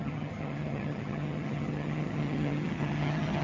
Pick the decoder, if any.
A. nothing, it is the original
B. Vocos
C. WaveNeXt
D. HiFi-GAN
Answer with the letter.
D